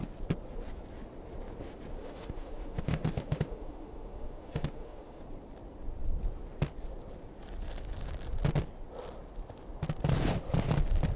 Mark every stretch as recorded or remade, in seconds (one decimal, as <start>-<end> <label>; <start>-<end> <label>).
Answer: 0.0-2.0 recorded; 2.0-5.2 remade; 5.2-11.2 recorded